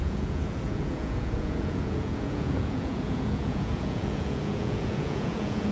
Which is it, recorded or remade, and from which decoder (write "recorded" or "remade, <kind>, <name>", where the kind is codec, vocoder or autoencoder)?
remade, vocoder, Vocos